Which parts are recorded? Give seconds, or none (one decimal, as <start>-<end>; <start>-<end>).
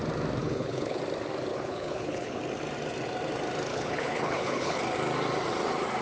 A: 0.0-0.4; 1.0-1.5; 2.4-3.7; 4.8-6.0